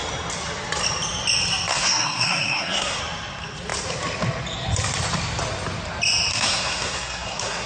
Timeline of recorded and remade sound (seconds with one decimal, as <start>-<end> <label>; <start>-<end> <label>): 0.0-1.7 recorded; 1.7-3.0 remade; 3.0-6.3 recorded; 6.3-7.7 remade